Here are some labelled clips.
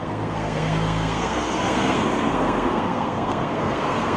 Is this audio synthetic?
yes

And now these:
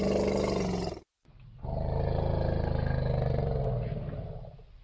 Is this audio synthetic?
no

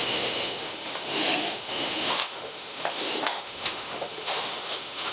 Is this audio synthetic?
yes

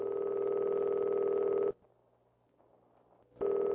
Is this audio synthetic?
no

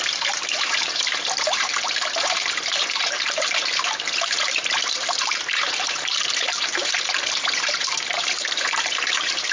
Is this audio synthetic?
yes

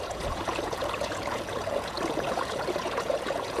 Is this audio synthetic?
yes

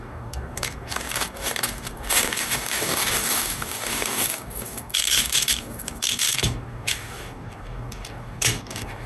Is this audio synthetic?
yes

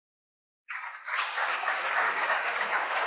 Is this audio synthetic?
yes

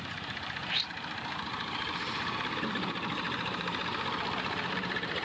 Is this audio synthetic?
yes